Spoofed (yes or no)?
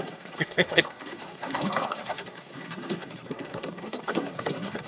yes